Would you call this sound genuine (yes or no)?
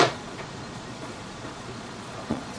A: no